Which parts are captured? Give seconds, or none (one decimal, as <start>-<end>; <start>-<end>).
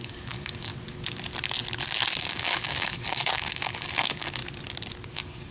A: 0.7-2.2; 4.4-5.1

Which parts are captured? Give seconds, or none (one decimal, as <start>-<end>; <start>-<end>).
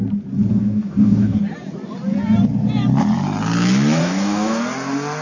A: 0.0-0.5; 1.4-4.0; 4.6-5.2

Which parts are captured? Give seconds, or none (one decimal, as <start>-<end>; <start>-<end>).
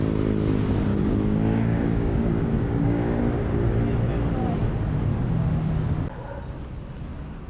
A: 0.0-0.9; 3.2-7.5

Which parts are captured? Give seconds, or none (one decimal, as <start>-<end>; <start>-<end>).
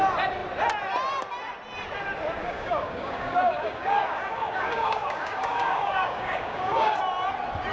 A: 0.0-2.4; 7.0-7.7